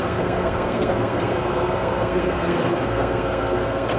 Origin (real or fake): fake